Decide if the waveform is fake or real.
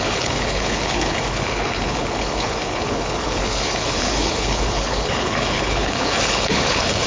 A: fake